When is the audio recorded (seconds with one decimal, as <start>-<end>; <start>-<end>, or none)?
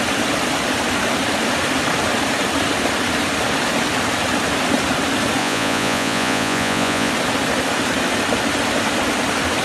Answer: 0.0-5.4; 7.1-9.6